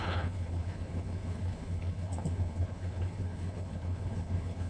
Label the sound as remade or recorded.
remade